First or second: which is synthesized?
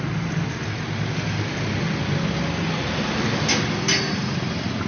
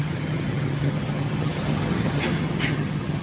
second